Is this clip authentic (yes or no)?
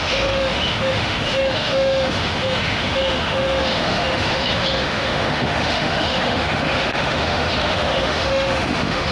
no